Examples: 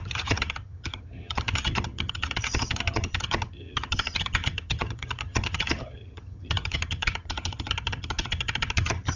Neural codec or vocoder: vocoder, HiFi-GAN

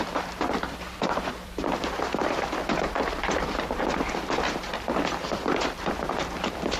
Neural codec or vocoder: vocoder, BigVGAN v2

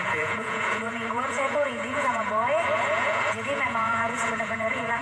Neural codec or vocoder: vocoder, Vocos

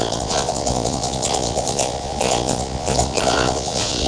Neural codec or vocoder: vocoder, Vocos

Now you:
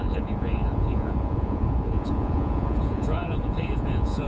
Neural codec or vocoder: vocoder, Vocos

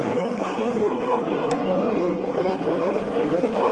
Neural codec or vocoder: codec, SNAC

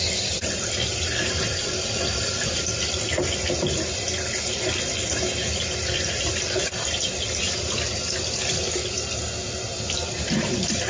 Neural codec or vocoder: none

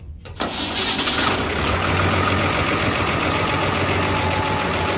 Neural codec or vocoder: vocoder, Vocos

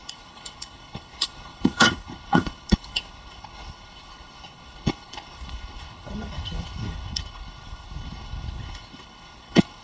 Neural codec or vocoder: codec, HILCodec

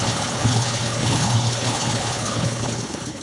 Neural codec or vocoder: codec, HILCodec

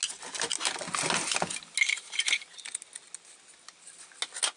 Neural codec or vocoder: none